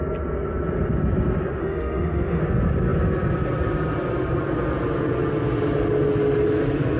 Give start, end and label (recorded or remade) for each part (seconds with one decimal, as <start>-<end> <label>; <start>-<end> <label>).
0.0-1.6 recorded; 1.6-2.4 remade; 2.4-7.0 recorded